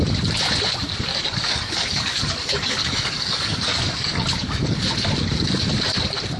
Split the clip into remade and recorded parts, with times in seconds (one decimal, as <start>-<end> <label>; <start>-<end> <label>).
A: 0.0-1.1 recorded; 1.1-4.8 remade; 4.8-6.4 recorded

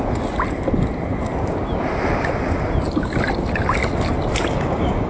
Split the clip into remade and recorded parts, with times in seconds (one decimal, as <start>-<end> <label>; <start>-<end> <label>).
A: 0.0-4.5 recorded; 4.5-5.1 remade

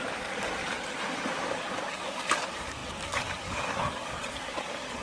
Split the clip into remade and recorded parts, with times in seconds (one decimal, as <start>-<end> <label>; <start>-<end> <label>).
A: 0.0-0.6 remade; 0.6-1.1 recorded; 1.1-5.0 remade

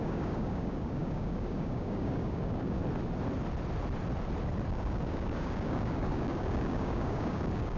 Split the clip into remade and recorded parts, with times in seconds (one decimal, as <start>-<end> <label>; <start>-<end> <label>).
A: 0.0-2.8 remade; 2.8-4.7 recorded; 4.7-7.8 remade